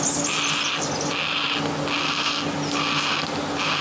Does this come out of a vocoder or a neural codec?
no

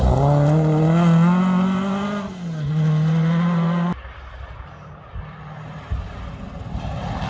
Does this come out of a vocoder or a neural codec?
no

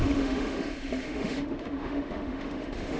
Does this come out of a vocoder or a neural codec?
yes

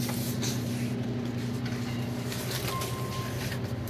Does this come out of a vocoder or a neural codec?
no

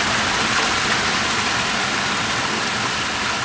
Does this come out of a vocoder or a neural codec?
no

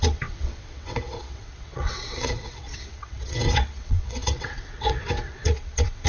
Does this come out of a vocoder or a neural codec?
yes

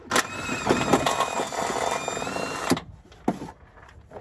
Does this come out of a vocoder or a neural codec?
no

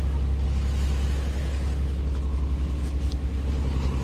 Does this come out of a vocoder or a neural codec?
no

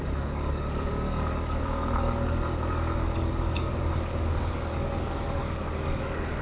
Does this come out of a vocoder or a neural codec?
yes